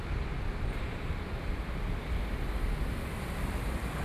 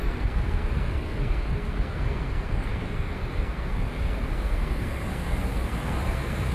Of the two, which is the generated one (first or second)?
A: second